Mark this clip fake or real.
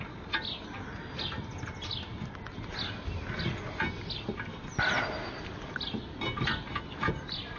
real